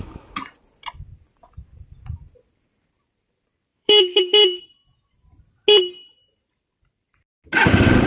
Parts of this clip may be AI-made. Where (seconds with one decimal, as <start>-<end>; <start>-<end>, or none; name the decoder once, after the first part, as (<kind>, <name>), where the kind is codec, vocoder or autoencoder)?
3.7-4.6 (autoencoder, DAC-VAE)